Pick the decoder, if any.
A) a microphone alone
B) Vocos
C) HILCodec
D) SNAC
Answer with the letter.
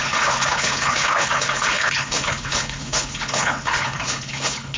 C